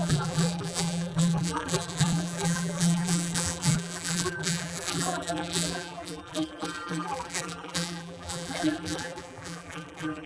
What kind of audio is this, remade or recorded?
remade